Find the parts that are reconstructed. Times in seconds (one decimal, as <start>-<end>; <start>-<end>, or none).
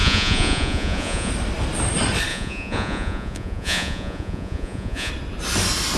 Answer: 0.0-1.3; 2.3-5.1